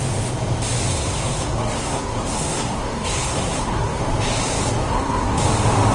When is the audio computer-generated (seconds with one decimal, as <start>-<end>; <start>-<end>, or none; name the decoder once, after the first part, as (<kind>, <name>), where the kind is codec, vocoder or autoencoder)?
0.9-4.0 (codec, SNAC); 4.8-5.4